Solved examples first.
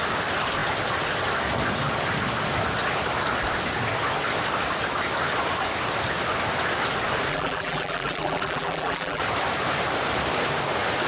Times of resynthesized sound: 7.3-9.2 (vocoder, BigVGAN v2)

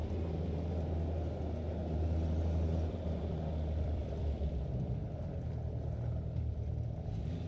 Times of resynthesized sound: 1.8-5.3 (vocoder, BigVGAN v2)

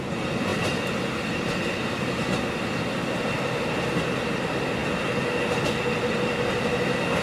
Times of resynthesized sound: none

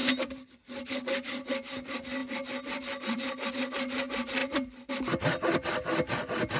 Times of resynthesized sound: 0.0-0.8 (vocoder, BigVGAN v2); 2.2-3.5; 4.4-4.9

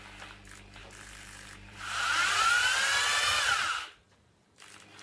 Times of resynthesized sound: 0.8-2.4 (vocoder, BigVGAN v2)

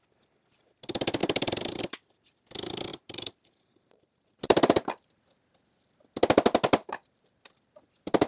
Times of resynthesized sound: 2.9-5.2 (vocoder, BigVGAN v2); 6.8-7.4